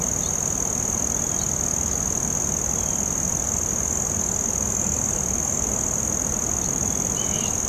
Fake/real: real